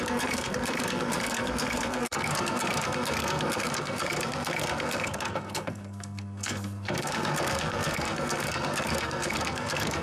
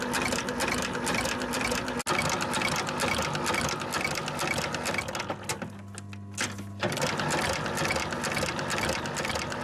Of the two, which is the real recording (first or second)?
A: second